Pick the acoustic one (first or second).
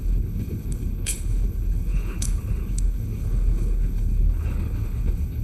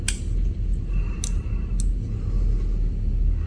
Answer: second